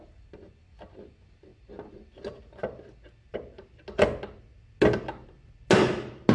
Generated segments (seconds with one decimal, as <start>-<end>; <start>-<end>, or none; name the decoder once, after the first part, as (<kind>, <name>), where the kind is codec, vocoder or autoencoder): none